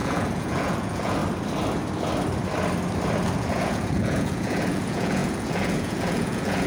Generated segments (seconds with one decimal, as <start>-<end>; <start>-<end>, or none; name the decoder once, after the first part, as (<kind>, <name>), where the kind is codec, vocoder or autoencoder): 0.0-1.2 (vocoder, Vocos); 3.4-6.7